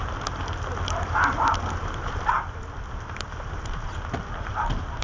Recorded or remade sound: recorded